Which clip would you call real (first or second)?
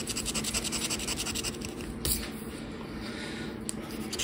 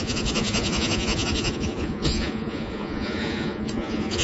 first